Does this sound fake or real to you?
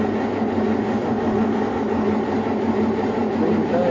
real